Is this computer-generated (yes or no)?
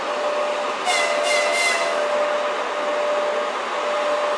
no